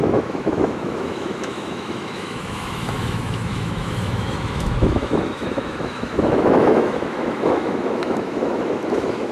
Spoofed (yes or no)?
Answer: yes